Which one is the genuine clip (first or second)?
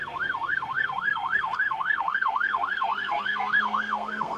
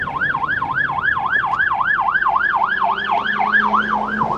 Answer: second